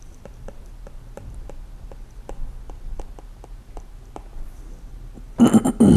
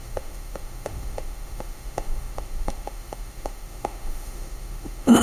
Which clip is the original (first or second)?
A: first